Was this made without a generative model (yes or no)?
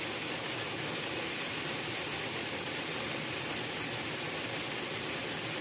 yes